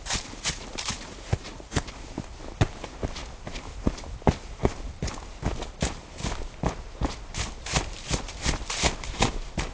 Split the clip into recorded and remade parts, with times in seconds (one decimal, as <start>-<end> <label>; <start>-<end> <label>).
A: 0.0-1.1 recorded; 1.1-1.8 remade; 1.8-9.7 recorded